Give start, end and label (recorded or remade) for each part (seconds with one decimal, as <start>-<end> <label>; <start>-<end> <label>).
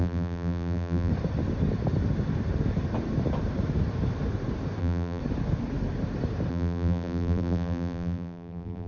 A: 0.0-1.1 remade; 1.1-4.8 recorded; 4.8-5.2 remade; 5.2-6.5 recorded; 6.5-8.9 remade